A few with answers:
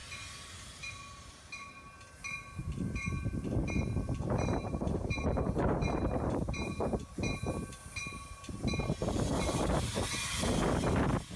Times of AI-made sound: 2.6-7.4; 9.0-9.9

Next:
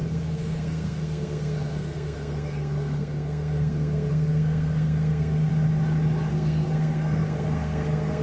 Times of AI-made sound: 0.0-5.5; 6.3-8.2

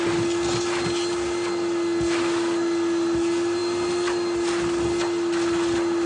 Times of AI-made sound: none

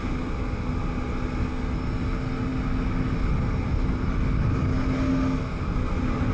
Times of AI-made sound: none

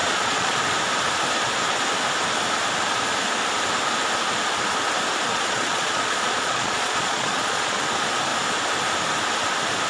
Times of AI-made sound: 0.0-0.6; 5.3-7.8

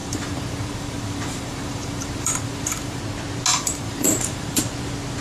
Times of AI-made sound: 0.0-3.0; 3.5-4.6

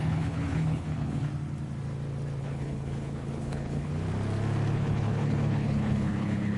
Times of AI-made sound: 0.0-1.3; 2.4-3.9; 4.7-6.6